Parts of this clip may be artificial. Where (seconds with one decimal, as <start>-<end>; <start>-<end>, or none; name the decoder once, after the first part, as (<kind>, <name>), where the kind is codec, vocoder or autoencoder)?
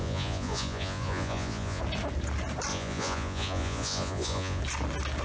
0.0-1.8 (vocoder, Vocos); 2.7-4.6